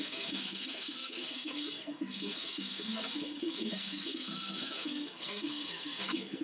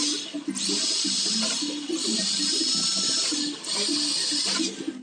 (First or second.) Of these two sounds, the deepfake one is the first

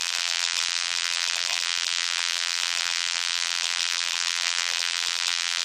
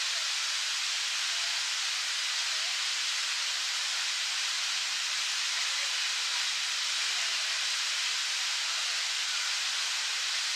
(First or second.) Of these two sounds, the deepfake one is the first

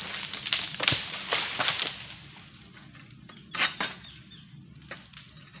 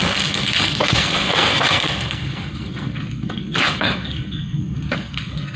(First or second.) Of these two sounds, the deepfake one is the second